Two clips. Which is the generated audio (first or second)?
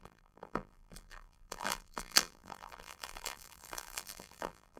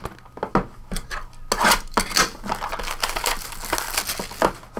first